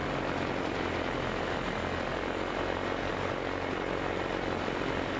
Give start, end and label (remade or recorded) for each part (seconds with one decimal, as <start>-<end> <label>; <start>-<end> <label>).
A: 0.0-5.2 recorded